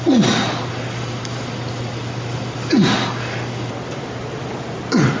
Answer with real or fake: real